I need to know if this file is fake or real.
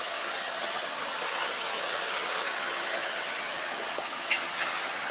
fake